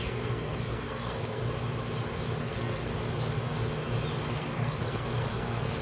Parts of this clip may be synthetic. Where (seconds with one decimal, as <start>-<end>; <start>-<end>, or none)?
0.0-1.4; 2.4-2.9; 4.3-5.8